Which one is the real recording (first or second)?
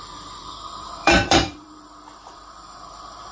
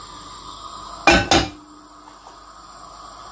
second